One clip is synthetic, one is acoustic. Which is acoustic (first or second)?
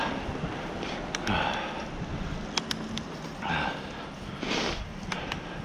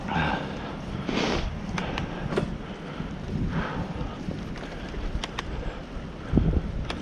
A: first